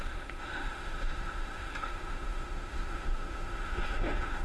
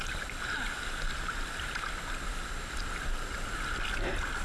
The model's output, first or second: first